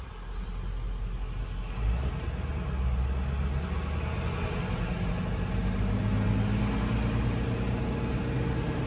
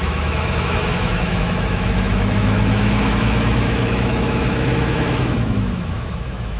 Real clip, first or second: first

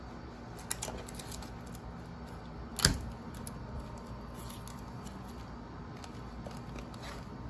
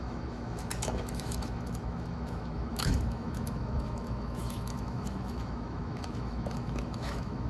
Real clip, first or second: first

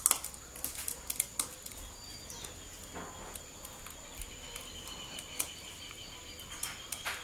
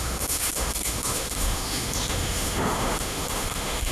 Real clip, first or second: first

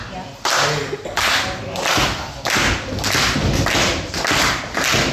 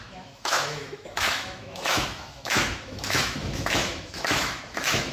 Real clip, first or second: first